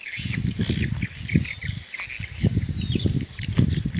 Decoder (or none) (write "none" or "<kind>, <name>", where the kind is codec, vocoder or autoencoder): none